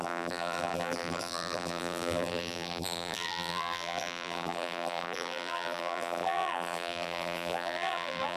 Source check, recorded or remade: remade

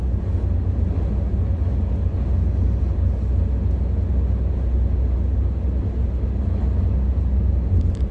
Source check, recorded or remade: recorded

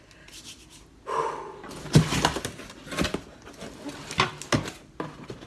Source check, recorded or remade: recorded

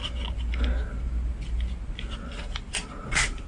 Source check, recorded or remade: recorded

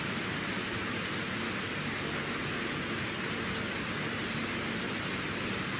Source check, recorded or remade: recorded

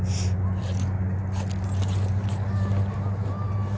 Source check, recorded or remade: recorded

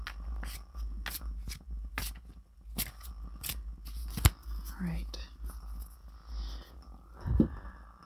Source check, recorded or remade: recorded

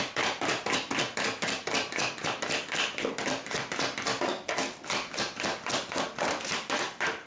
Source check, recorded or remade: remade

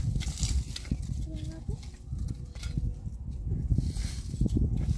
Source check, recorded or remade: recorded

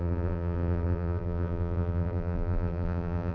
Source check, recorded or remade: remade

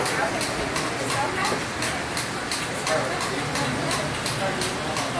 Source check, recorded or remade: recorded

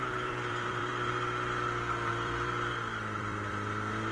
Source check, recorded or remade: remade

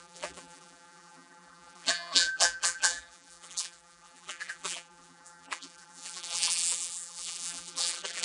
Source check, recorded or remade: remade